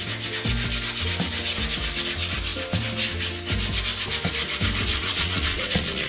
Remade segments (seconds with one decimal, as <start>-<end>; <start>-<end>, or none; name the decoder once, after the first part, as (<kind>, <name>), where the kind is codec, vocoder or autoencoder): 4.9-6.1 (vocoder, Vocos)